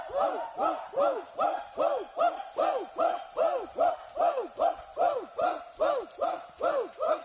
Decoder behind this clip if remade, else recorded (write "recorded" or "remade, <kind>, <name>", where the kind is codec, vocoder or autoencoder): recorded